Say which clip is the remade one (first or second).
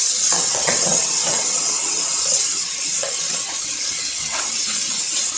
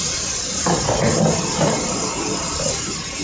first